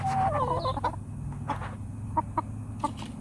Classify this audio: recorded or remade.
recorded